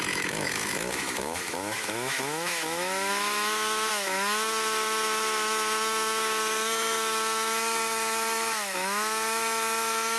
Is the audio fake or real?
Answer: fake